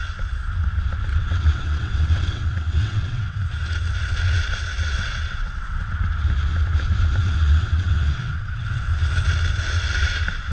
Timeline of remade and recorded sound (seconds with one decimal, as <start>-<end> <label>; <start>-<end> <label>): 0.0-1.1 recorded; 1.1-3.4 remade; 3.4-4.9 recorded; 4.9-6.0 remade; 6.0-7.2 recorded; 7.2-8.9 remade; 8.9-10.5 recorded